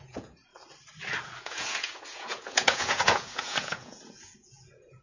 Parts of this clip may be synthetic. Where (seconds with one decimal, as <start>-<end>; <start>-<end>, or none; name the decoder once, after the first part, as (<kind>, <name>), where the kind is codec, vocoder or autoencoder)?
0.0-0.5 (vocoder, Vocos); 1.4-5.0